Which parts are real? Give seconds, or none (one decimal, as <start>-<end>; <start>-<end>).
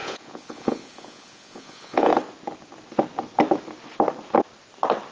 2.1-5.1